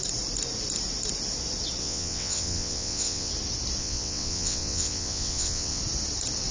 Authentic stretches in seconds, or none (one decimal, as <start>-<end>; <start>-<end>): 0.0-1.8; 3.3-3.8; 5.8-6.5